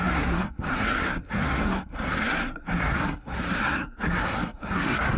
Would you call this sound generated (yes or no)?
yes